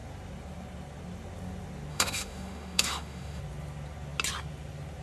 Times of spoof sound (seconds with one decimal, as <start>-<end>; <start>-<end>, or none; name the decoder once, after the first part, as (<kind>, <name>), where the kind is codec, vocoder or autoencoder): 1.9-3.4 (autoencoder, DAC-VAE)